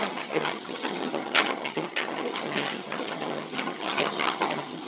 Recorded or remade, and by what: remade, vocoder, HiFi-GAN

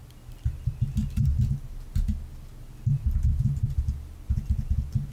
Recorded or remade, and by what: recorded